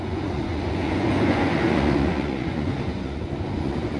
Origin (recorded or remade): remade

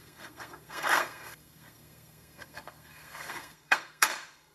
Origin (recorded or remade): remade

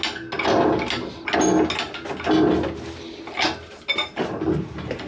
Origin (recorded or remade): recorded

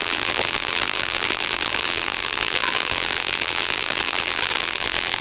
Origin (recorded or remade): remade